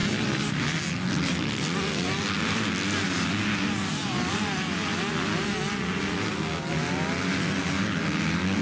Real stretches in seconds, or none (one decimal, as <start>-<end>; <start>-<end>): 0.0-8.6